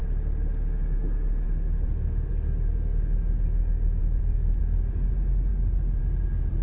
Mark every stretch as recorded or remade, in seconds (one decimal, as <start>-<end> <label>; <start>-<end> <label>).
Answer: 0.0-4.0 recorded; 4.0-4.6 remade; 4.6-5.5 recorded; 5.5-6.0 remade; 6.0-6.6 recorded